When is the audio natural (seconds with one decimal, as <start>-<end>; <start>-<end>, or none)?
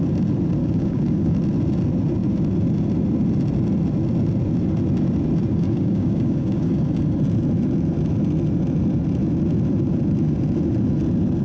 0.0-0.6; 1.3-5.5; 6.7-11.4